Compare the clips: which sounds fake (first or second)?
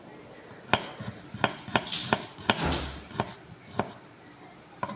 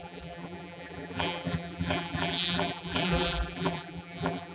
second